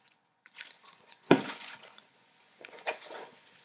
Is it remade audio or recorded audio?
remade